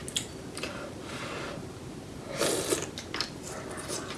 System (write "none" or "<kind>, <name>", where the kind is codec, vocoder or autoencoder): none